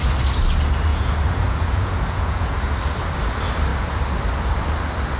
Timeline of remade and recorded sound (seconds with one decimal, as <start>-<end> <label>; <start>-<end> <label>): 0.0-0.9 recorded; 0.9-2.6 remade; 2.6-5.2 recorded

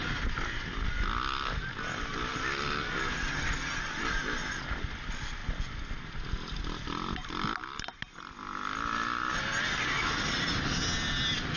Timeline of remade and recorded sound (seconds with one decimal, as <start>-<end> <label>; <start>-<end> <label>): 0.0-11.6 recorded

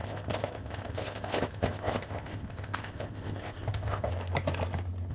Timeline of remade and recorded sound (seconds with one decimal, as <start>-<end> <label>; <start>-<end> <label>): 0.0-4.1 remade; 4.1-5.1 recorded

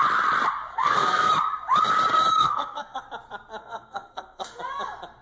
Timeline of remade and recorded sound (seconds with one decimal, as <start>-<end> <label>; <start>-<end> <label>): 0.0-0.7 recorded; 0.7-1.3 remade; 1.3-2.4 recorded; 2.4-3.0 remade; 3.0-3.6 recorded; 3.6-4.6 remade; 4.6-5.2 recorded

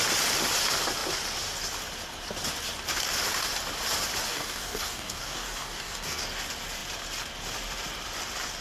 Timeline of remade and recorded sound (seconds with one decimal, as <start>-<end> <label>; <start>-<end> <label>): 0.0-4.3 recorded; 4.3-6.2 remade; 6.2-8.6 recorded